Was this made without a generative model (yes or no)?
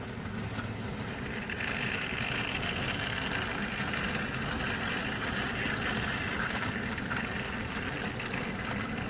yes